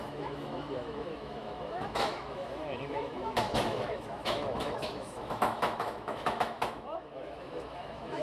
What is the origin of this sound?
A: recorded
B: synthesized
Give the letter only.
B